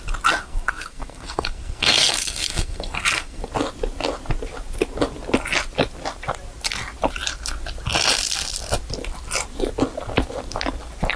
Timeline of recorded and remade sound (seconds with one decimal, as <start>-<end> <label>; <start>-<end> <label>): 0.0-0.4 recorded; 0.4-3.4 remade; 3.4-11.2 recorded